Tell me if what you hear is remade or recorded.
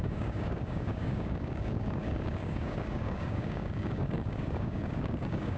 remade